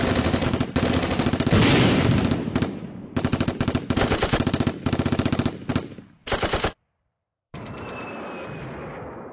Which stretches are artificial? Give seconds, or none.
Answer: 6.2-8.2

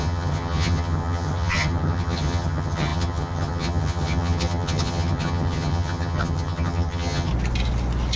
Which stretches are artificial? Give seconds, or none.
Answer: 0.0-7.3

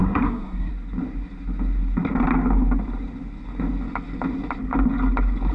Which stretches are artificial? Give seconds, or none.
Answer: 0.0-0.7

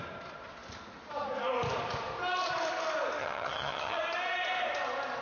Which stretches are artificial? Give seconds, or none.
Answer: 3.2-4.0

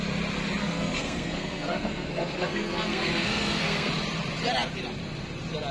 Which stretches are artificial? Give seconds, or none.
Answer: 0.6-3.9

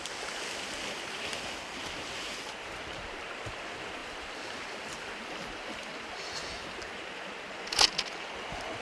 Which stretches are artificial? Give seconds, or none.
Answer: 4.0-6.9

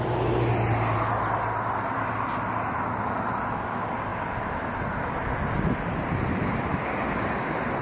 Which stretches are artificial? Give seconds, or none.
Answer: none